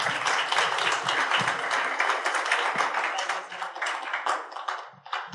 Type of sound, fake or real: real